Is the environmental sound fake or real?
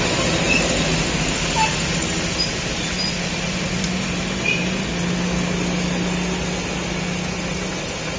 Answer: real